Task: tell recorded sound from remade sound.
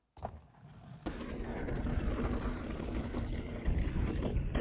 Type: recorded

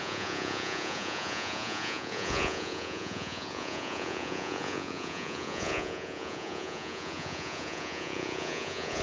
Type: remade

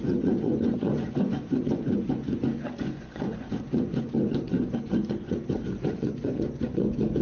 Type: remade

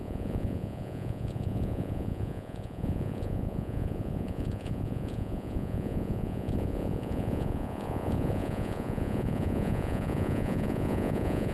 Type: remade